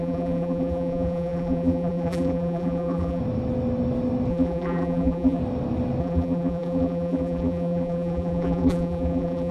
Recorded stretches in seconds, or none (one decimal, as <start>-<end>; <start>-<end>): 3.2-4.3; 5.4-6.0